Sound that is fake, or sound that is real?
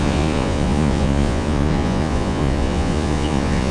fake